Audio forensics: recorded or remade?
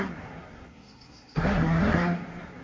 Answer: remade